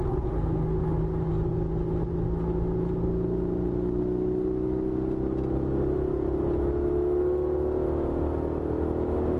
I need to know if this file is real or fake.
real